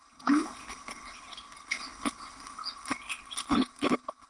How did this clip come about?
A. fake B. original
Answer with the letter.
A